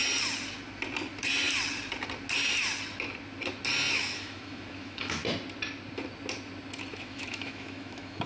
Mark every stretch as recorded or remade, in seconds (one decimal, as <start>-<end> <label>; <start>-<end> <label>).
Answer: 0.0-3.9 recorded; 3.9-5.2 remade; 5.2-6.9 recorded; 6.9-8.3 remade